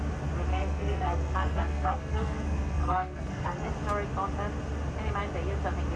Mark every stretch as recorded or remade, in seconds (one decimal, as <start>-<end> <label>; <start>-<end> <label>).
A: 0.0-0.5 recorded; 0.5-3.7 remade; 3.7-6.0 recorded

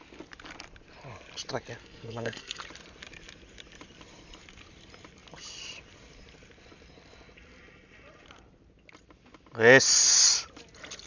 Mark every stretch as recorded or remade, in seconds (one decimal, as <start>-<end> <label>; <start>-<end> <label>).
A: 0.0-1.8 recorded; 1.8-2.6 remade; 2.6-11.1 recorded

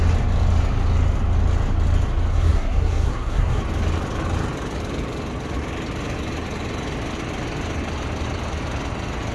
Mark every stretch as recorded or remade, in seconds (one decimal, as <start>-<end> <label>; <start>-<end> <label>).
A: 0.0-2.3 recorded; 2.3-3.6 remade; 3.6-9.3 recorded